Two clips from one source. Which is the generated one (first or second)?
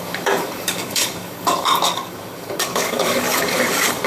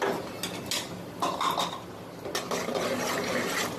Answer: first